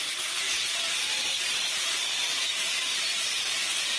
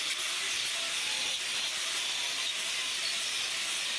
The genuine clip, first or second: second